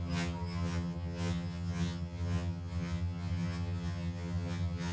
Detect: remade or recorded remade